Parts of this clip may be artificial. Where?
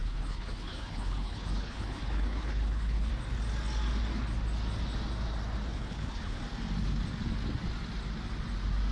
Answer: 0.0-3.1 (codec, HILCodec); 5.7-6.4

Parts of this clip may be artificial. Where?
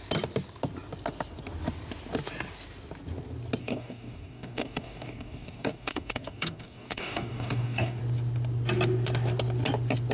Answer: 3.6-8.0 (codec, DAC)